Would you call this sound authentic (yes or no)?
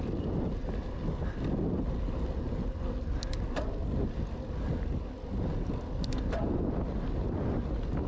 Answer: yes